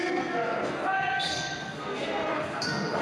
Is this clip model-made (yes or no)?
yes